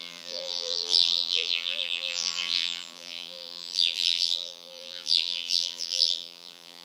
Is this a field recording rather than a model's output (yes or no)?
no